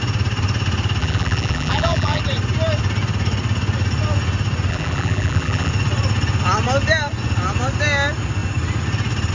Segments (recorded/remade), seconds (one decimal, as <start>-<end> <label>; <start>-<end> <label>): 0.0-1.0 recorded; 1.0-2.2 remade; 2.2-4.7 recorded; 4.7-5.7 remade; 5.7-9.3 recorded